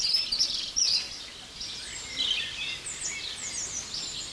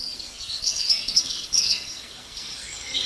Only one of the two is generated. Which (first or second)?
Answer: second